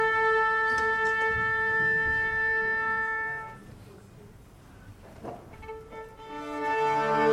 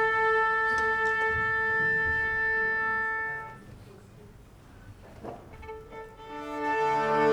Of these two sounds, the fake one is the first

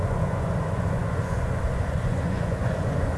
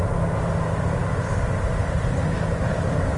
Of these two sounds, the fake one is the first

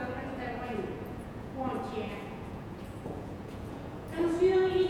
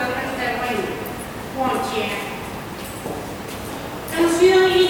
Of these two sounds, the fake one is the first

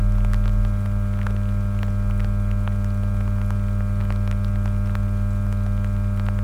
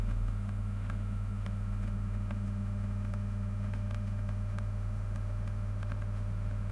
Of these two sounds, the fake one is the second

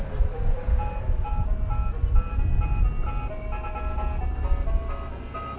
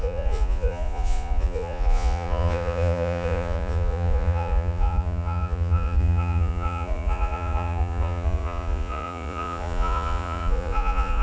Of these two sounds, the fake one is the second